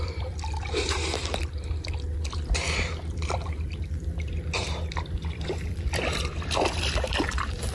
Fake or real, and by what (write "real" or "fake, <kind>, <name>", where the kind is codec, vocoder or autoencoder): fake, vocoder, BigVGAN v2